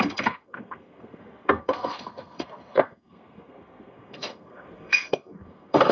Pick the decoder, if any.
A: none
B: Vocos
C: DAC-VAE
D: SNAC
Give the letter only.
D